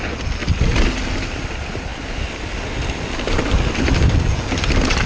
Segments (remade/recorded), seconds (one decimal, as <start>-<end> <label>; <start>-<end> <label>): 0.0-5.1 recorded